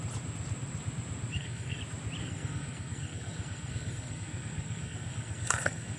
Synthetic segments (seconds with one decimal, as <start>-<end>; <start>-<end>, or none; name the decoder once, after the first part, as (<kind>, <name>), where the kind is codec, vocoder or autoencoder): 1.3-1.8 (codec, SNAC); 2.2-6.0